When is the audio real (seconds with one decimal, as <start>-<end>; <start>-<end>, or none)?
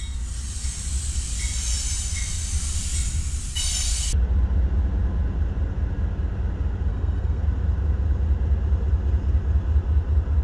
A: 0.0-6.9; 7.4-10.4